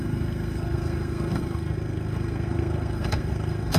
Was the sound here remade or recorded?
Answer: remade